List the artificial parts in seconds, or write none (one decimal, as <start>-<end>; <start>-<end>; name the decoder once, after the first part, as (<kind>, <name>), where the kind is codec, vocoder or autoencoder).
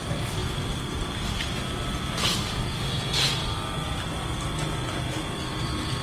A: none